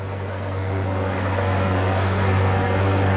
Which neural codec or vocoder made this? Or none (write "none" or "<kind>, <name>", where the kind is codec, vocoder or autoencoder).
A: codec, SNAC